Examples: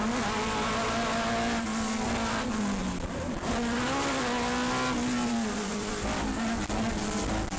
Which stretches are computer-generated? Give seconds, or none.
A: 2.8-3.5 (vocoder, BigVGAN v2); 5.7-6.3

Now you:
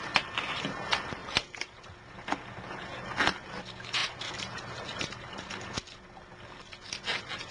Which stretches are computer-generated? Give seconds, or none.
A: 1.2-2.0 (vocoder, BigVGAN v2); 4.0-5.5

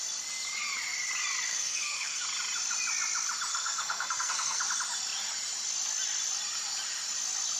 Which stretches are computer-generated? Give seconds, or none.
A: 1.5-2.2 (codec, SNAC); 3.5-4.6

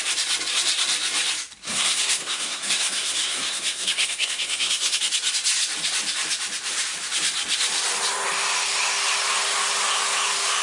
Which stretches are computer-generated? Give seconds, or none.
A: 1.6-5.0 (codec, SNAC)

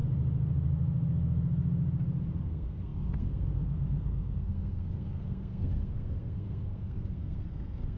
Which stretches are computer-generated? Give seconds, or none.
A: 2.4-8.0 (codec, SNAC)

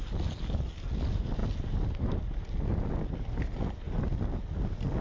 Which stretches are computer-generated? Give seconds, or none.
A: none

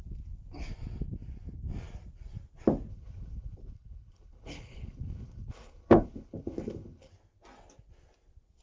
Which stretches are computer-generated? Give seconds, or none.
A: 2.9-7.1 (codec, HILCodec)